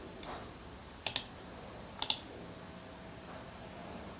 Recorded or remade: recorded